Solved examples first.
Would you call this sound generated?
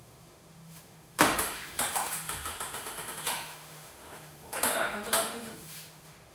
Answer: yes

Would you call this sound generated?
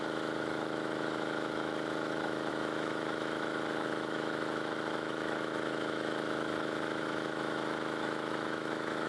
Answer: yes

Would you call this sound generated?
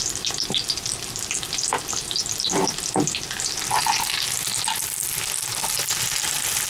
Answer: no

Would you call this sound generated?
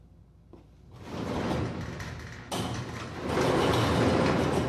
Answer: no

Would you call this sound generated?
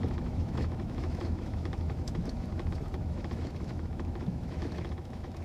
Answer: yes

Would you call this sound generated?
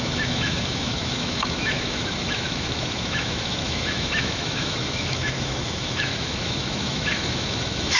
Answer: yes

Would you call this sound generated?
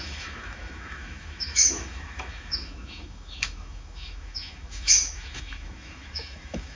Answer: yes